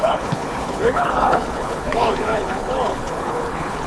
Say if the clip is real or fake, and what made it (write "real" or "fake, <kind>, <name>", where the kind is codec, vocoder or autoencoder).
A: fake, codec, HILCodec